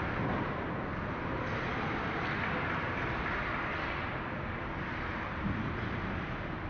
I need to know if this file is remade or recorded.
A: recorded